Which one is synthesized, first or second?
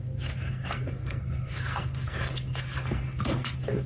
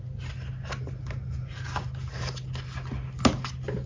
first